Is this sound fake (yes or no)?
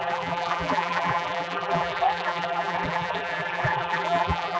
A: yes